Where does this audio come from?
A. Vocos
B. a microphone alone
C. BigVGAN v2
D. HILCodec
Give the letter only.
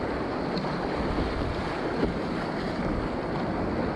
B